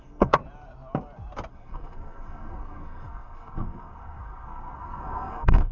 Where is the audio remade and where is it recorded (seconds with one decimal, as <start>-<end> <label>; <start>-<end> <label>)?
0.0-0.4 remade; 0.4-1.5 recorded; 1.5-5.7 remade